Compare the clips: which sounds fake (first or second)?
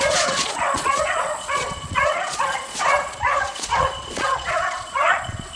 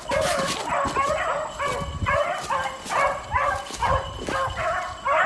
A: first